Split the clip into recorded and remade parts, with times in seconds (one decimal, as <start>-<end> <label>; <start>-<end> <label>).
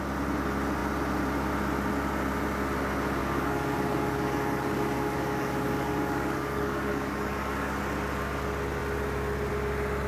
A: 0.0-3.2 recorded; 3.2-7.8 remade; 7.8-10.1 recorded